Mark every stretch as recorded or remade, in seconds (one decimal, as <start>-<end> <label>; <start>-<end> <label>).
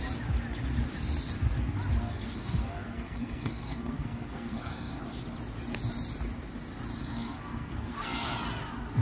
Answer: 0.0-2.0 recorded; 2.0-5.0 remade; 5.0-7.0 recorded; 7.0-8.3 remade; 8.3-9.0 recorded